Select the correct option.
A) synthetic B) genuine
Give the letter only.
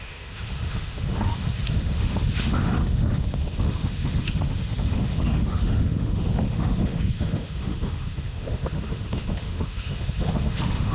A